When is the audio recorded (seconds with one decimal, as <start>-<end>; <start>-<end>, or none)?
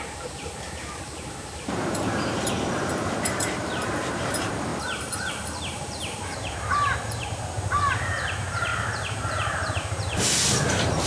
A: none